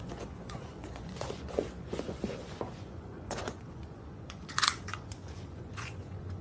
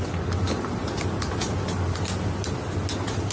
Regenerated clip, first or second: first